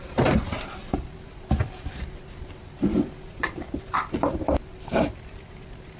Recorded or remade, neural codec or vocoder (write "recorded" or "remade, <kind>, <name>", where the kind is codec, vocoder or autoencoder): remade, vocoder, BigVGAN v2